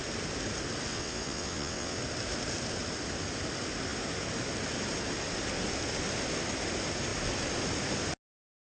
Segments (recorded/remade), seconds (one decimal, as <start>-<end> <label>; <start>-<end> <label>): 0.0-0.9 recorded; 0.9-2.0 remade; 2.0-8.7 recorded